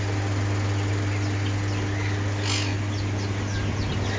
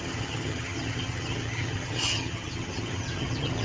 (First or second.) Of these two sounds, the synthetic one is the second